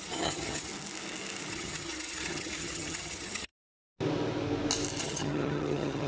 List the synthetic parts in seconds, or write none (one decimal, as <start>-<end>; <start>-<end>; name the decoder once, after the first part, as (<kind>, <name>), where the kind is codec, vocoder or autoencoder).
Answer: 0.0-0.7 (vocoder, HiFi-GAN); 1.5-3.5; 5.0-6.1